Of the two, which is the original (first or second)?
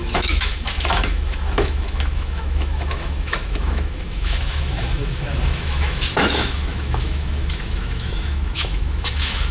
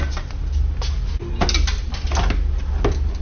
second